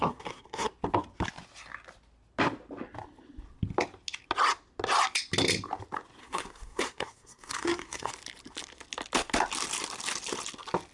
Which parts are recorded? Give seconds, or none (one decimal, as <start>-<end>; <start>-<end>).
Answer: 0.7-6.2; 8.1-10.9